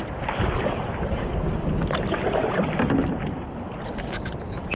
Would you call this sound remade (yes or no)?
no